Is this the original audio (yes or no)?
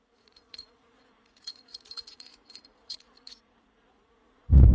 no